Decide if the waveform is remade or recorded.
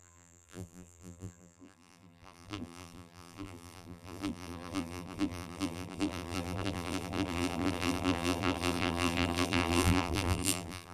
remade